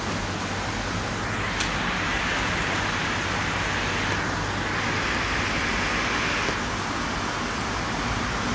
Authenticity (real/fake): real